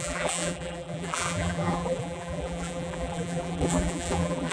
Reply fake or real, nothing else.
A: fake